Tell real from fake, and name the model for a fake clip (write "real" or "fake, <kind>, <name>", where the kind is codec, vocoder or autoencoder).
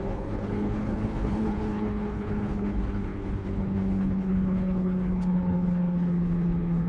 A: fake, codec, HILCodec